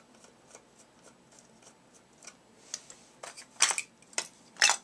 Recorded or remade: recorded